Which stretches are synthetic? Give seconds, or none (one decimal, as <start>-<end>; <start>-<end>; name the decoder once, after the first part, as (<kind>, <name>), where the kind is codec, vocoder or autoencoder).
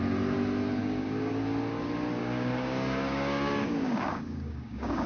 0.8-1.3 (codec, DAC); 2.2-5.1